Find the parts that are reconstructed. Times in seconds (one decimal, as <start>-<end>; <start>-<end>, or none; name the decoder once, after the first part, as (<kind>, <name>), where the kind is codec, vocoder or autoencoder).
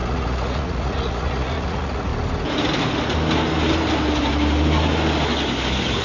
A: 0.0-2.1 (vocoder, Vocos)